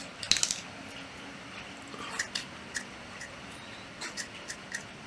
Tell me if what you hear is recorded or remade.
recorded